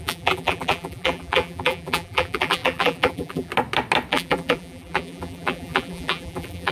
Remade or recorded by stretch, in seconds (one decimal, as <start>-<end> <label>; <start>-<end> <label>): 0.0-3.5 remade; 3.5-4.1 recorded; 4.1-6.7 remade